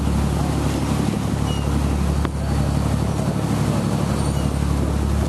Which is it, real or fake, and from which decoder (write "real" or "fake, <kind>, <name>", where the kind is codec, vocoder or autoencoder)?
real